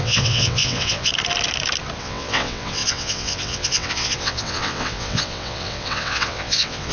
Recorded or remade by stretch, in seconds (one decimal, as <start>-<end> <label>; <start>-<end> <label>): 0.0-1.1 remade; 1.1-2.0 recorded; 2.0-6.9 remade